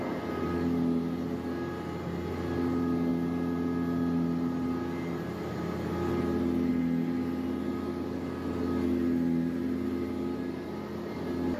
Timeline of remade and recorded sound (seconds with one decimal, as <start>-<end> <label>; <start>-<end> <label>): 0.0-11.6 recorded